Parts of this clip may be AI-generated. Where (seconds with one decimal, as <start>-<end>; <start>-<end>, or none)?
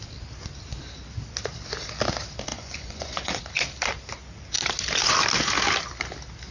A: 2.5-3.4